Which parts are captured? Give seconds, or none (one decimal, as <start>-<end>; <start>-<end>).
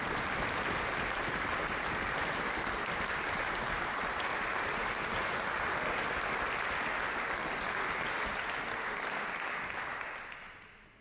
4.8-8.9